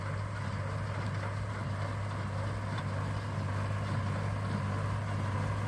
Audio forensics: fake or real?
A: real